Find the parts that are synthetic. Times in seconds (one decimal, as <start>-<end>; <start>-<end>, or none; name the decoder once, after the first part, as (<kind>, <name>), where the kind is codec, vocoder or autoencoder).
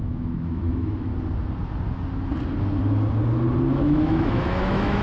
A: 0.0-1.1 (autoencoder, DAC-VAE); 3.7-5.0